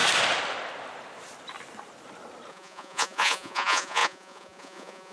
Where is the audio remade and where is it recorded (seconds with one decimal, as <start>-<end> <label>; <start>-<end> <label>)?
0.0-2.5 recorded; 2.5-5.1 remade